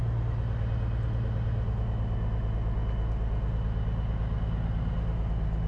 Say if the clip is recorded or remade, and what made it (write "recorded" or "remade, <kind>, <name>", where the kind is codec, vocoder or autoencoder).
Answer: recorded